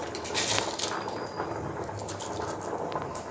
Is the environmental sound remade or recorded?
recorded